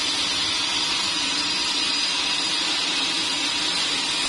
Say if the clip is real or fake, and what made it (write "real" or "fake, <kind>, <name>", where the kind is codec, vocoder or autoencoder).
real